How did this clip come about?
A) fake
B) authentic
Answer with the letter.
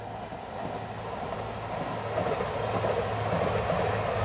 B